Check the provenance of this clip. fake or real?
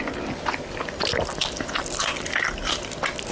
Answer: real